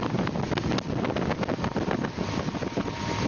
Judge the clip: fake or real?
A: real